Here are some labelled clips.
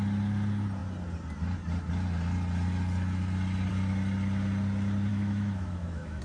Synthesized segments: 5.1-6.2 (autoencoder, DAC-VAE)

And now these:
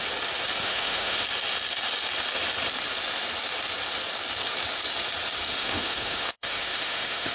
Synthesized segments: 0.6-1.2 (autoencoder, DAC-VAE); 5.5-7.3

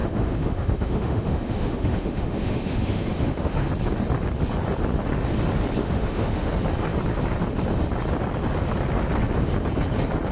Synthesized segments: 0.0-3.7 (autoencoder, DAC-VAE); 5.8-6.5

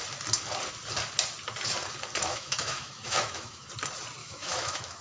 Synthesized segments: 2.2-3.7 (autoencoder, DAC-VAE); 4.2-5.0

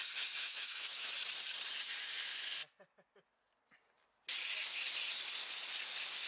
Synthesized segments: 0.4-1.1 (autoencoder, DAC-VAE)

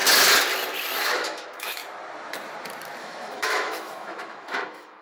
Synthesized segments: 1.0-1.8 (autoencoder, DAC-VAE); 3.0-5.0

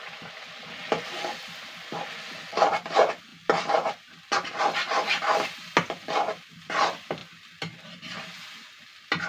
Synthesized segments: none

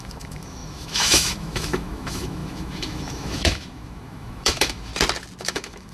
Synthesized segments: 0.0-4.9 (autoencoder, DAC-VAE); 5.4-5.9